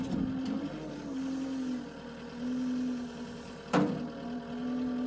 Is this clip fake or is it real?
real